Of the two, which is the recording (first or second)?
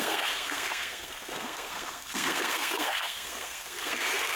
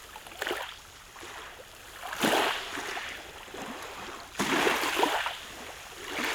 second